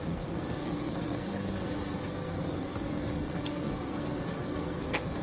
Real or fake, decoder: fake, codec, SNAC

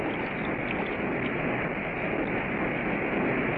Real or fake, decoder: real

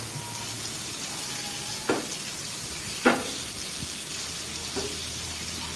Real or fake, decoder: real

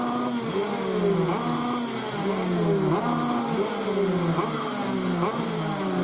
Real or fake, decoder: real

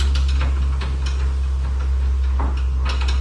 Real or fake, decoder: real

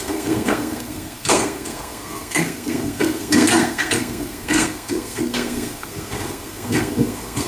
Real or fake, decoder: fake, codec, SNAC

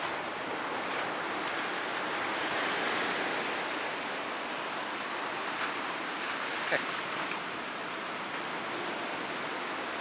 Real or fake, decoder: real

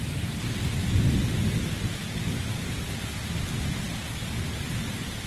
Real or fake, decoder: real